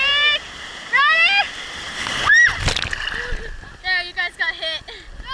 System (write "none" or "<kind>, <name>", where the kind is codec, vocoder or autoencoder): none